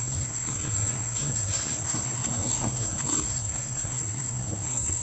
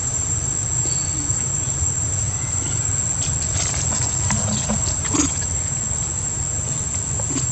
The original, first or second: second